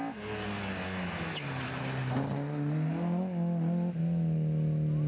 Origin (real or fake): real